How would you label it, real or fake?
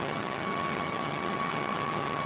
fake